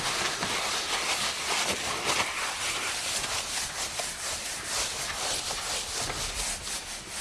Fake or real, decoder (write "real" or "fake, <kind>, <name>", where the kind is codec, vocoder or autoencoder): real